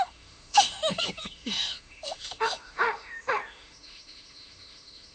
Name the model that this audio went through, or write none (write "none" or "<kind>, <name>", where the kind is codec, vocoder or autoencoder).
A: autoencoder, DAC-VAE